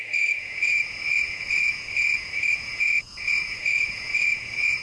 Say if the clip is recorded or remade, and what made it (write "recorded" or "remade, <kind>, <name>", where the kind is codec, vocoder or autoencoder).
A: remade, vocoder, Vocos